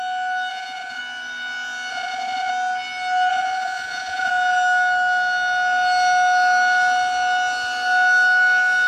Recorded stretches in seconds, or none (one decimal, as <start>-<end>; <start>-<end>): 0.0-0.5; 1.0-1.9; 2.5-3.3; 4.3-8.9